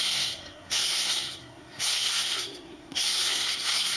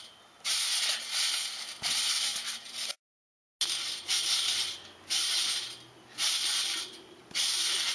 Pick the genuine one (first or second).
second